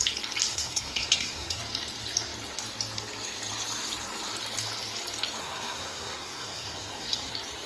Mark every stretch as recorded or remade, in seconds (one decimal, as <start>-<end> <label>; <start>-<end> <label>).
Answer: 0.0-0.5 recorded; 0.5-1.6 remade; 1.6-5.4 recorded; 5.4-7.3 remade; 7.3-7.7 recorded